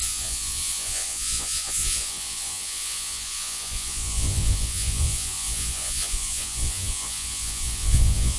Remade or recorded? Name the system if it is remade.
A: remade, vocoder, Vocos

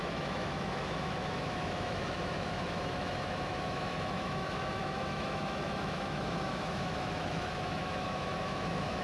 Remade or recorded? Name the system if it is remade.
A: remade, autoencoder, DAC-VAE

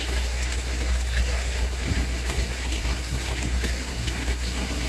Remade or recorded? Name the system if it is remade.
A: remade, codec, SNAC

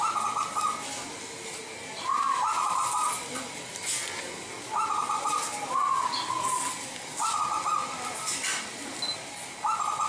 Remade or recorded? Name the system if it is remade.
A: recorded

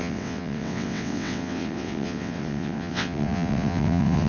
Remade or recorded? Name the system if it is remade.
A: remade, vocoder, WaveNeXt